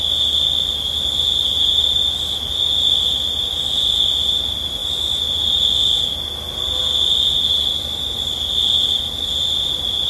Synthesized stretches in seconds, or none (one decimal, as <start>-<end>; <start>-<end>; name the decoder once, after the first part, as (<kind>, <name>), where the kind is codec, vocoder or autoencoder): none